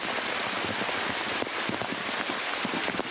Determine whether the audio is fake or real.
real